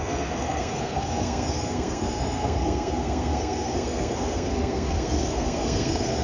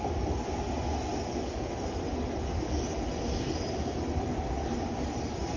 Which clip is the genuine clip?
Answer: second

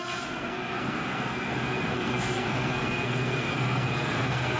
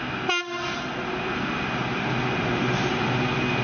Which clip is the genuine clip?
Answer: second